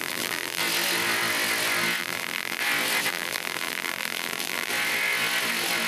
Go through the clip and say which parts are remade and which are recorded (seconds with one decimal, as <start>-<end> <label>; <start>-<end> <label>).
0.0-0.6 remade; 0.6-2.0 recorded; 2.0-2.6 remade; 2.6-3.1 recorded; 3.1-4.7 remade; 4.7-5.9 recorded

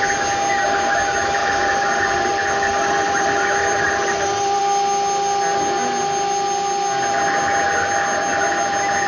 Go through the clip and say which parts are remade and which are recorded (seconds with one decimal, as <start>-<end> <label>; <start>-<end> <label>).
0.0-1.4 recorded; 1.4-4.6 remade; 4.6-9.1 recorded

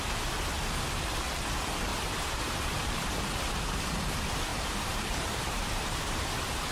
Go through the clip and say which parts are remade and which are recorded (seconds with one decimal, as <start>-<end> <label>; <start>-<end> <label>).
0.0-1.9 recorded; 1.9-2.8 remade; 2.8-4.5 recorded; 4.5-6.2 remade; 6.2-6.7 recorded

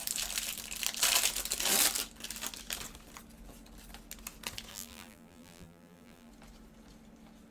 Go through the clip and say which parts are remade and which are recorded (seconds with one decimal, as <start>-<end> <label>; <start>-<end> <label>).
0.0-4.7 recorded; 4.7-6.3 remade; 6.3-7.5 recorded

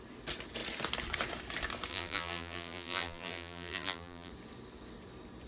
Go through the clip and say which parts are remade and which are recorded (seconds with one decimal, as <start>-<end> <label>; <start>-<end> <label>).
0.0-1.9 recorded; 1.9-4.3 remade; 4.3-5.5 recorded